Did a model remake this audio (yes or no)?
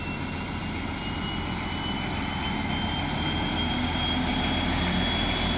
no